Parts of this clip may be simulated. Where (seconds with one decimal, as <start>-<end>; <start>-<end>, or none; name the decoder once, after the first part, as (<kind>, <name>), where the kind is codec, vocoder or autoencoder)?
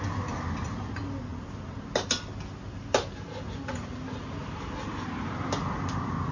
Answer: none